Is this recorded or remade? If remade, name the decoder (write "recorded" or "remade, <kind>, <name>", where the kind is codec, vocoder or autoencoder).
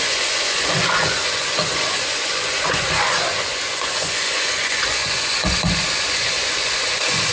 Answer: remade, vocoder, Vocos